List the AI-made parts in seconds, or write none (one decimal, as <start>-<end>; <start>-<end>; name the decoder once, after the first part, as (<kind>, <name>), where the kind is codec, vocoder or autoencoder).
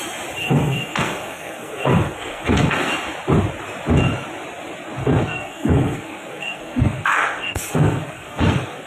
0.4-2.9 (codec, SNAC); 5.0-8.9